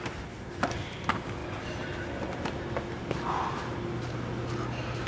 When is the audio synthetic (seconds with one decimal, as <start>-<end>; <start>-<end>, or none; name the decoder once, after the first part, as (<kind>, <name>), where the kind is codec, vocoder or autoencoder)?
none